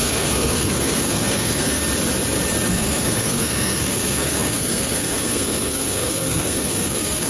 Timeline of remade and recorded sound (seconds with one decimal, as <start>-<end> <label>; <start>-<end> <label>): 0.0-1.8 remade; 1.8-2.7 recorded; 2.7-7.3 remade